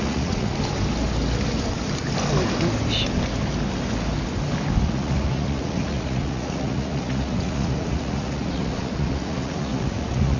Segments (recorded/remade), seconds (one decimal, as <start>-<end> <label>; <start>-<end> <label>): 0.0-0.5 remade; 0.5-4.8 recorded; 4.8-10.4 remade